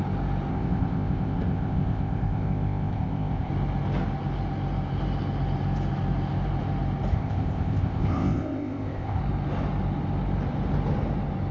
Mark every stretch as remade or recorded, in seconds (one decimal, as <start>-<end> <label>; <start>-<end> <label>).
0.0-0.5 recorded; 0.5-3.5 remade; 3.5-7.1 recorded; 7.1-9.2 remade; 9.2-11.5 recorded